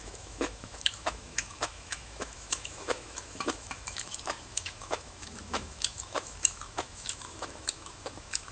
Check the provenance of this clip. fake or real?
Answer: fake